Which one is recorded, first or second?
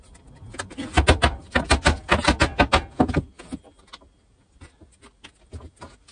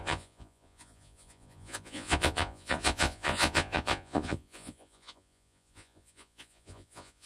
first